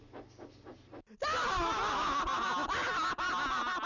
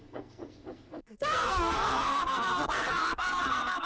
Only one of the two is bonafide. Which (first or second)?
first